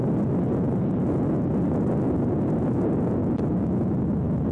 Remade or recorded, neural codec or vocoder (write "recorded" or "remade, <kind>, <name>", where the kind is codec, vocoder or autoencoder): recorded